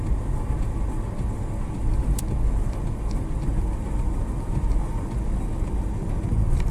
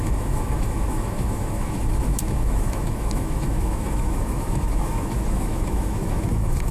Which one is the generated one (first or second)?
second